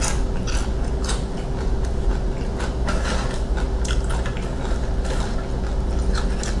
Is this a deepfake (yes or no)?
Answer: no